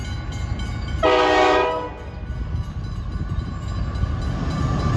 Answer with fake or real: real